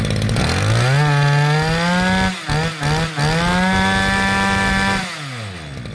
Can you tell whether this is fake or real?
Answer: real